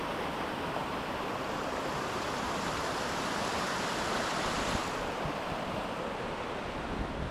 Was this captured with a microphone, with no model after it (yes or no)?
no